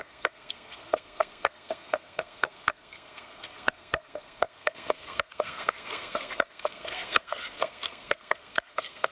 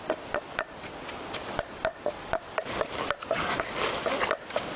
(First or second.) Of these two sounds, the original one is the second